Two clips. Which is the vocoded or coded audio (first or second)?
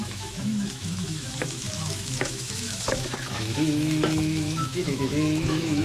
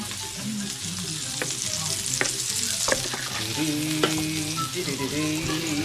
first